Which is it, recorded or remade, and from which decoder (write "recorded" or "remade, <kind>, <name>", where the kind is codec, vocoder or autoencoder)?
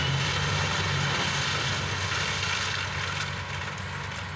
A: recorded